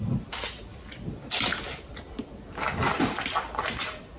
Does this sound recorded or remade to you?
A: recorded